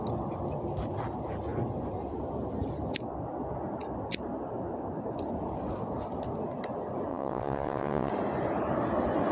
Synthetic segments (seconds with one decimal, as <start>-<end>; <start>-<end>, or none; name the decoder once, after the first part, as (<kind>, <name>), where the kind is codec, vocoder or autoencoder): 7.1-8.1 (vocoder, WaveNeXt)